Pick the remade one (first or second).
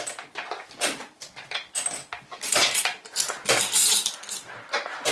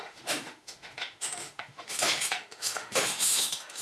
second